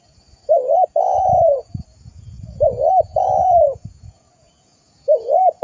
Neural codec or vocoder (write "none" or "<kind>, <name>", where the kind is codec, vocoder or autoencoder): vocoder, Vocos